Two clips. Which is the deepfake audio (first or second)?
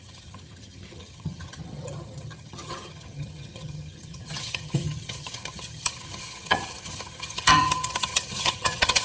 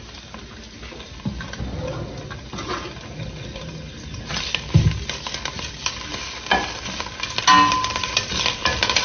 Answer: first